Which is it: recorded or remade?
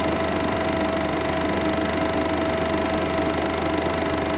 recorded